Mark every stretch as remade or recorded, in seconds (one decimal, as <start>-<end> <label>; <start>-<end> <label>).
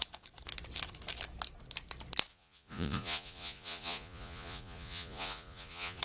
0.0-2.3 recorded; 2.3-6.0 remade